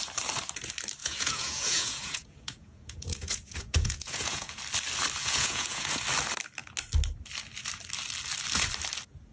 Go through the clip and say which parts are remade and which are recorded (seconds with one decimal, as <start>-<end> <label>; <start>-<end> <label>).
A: 0.0-1.0 recorded; 1.0-4.6 remade; 4.6-5.2 recorded; 5.2-6.0 remade; 6.0-9.3 recorded